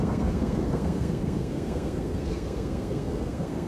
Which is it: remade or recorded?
remade